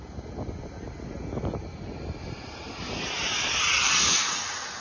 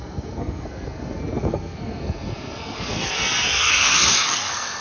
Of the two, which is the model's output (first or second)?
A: second